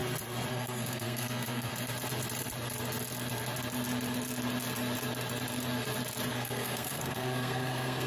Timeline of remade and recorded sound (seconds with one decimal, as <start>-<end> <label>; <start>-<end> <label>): 0.0-0.5 recorded; 0.5-1.7 remade; 1.7-6.3 recorded; 6.3-8.1 remade

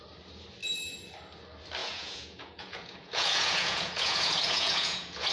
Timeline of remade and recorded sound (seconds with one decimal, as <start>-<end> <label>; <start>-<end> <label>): 0.0-1.8 recorded; 1.8-5.3 remade

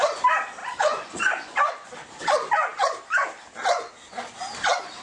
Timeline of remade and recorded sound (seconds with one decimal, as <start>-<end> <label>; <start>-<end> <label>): 0.0-0.6 recorded; 0.6-1.9 remade; 1.9-5.0 recorded

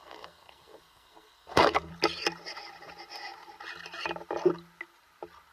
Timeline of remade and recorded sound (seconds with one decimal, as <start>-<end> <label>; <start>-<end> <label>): 0.0-1.9 remade; 1.9-5.5 recorded

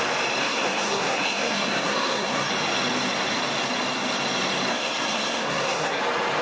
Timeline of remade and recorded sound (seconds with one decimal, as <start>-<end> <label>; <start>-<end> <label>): 0.0-0.4 recorded; 0.4-2.5 remade; 2.5-4.7 recorded; 4.7-6.0 remade; 6.0-6.4 recorded